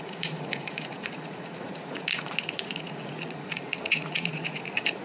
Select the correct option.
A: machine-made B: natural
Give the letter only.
A